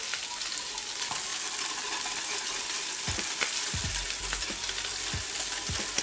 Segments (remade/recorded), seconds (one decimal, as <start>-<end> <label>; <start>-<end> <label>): 0.0-6.0 recorded